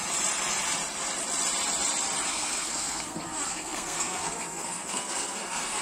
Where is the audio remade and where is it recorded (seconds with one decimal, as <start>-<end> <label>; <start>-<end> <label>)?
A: 0.0-2.3 recorded; 2.3-5.8 remade